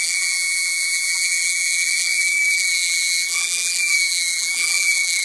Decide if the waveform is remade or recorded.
remade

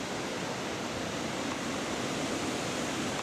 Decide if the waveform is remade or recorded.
recorded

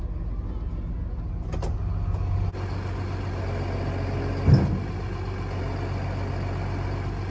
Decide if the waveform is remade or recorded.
recorded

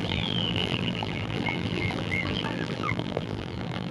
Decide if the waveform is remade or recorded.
remade